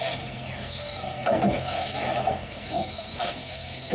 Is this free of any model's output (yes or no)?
no